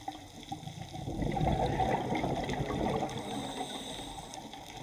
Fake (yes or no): no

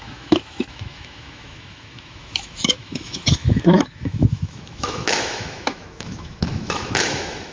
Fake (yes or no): yes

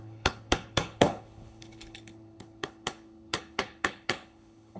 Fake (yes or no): yes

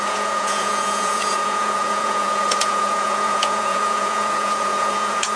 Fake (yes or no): yes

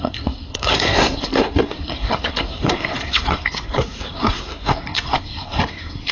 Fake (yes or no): yes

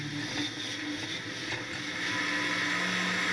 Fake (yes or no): no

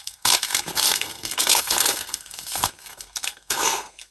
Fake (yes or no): yes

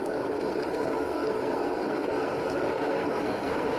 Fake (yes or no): yes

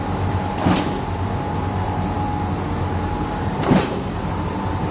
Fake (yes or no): no